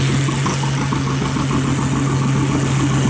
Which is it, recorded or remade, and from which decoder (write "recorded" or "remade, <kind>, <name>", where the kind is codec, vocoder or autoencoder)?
recorded